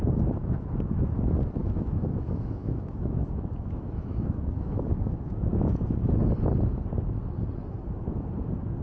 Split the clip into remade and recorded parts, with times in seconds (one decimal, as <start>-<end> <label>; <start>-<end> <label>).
0.0-0.4 recorded; 0.4-0.9 remade; 0.9-1.6 recorded; 1.6-5.5 remade; 5.5-8.8 recorded